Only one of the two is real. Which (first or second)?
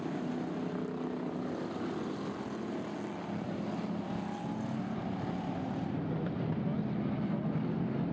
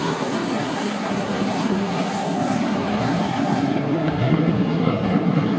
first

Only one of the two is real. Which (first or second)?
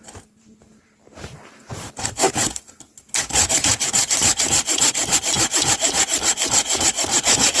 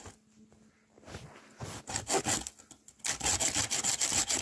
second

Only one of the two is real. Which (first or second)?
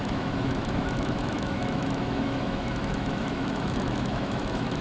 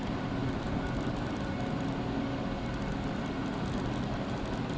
second